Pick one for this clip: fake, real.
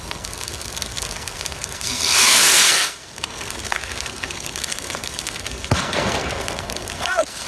fake